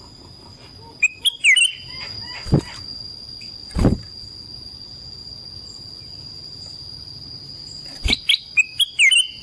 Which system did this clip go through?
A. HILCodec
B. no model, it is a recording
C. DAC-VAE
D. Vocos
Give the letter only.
B